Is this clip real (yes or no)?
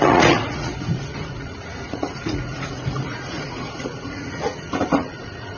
no